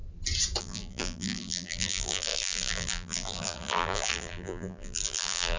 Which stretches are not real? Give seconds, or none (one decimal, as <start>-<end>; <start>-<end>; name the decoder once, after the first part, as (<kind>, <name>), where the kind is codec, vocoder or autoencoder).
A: 0.6-5.6 (vocoder, BigVGAN v2)